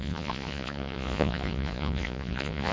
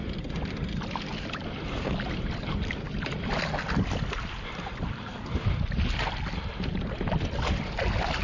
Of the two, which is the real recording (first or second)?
second